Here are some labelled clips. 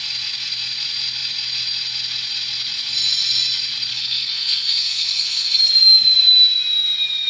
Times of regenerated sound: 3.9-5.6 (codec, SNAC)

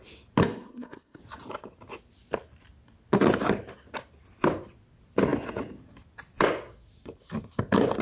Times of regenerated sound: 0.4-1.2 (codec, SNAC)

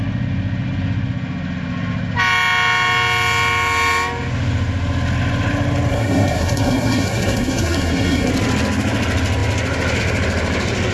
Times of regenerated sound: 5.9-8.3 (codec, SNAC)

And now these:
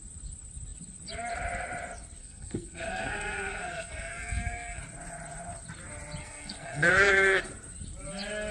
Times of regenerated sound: 2.2-4.8 (codec, SNAC); 6.2-7.4